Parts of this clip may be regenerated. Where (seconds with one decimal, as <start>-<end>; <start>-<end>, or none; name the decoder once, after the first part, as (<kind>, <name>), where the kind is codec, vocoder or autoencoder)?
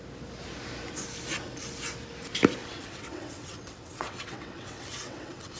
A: 2.6-5.6 (vocoder, WaveNeXt)